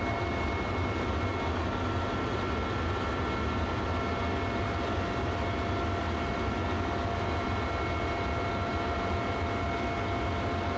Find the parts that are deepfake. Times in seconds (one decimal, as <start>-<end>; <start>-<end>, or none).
none